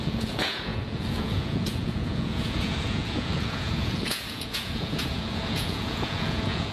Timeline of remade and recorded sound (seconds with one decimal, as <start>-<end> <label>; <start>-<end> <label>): 0.0-6.7 remade